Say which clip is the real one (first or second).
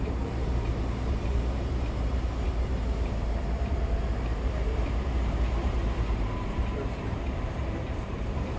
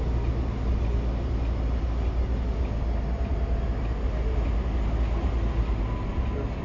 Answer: second